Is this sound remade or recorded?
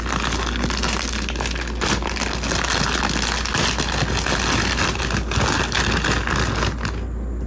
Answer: recorded